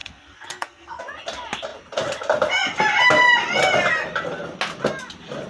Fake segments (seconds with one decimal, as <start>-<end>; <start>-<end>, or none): 0.0-1.0